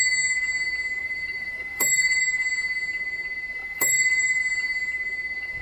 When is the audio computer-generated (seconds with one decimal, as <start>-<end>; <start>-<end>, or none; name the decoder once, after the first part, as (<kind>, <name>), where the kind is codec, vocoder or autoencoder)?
1.0-2.2 (vocoder, BigVGAN v2); 3.6-4.4